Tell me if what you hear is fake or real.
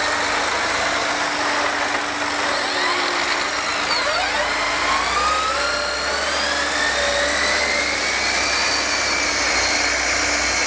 real